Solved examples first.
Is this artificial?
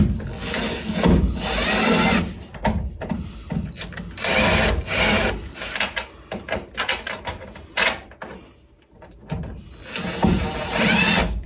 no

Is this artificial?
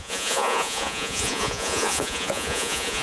yes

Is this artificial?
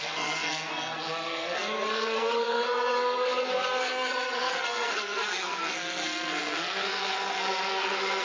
yes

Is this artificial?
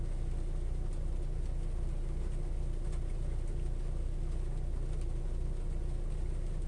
no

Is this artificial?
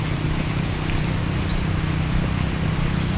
no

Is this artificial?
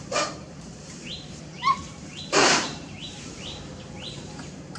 yes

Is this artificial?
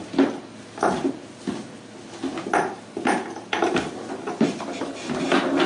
no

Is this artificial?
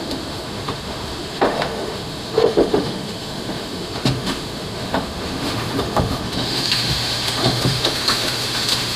yes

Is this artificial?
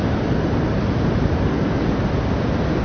no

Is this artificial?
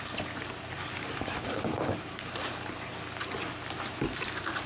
no